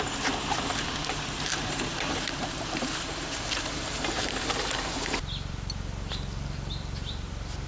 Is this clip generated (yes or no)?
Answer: yes